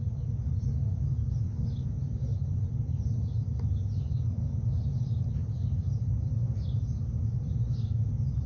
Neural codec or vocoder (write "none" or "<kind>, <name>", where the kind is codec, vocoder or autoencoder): none